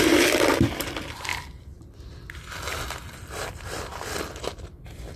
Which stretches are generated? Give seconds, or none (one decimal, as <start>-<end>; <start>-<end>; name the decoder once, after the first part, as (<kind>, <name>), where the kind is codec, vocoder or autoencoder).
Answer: none